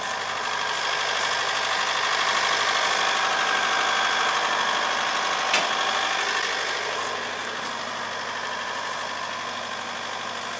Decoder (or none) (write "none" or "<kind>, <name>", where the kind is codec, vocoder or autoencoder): none